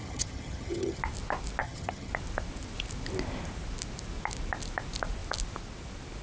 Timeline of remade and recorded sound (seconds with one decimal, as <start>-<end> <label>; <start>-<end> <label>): 0.0-1.0 remade; 1.0-1.6 recorded; 1.6-2.1 remade; 2.1-6.2 recorded